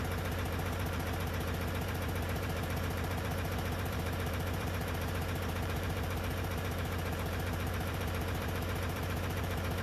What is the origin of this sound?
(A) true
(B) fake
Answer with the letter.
B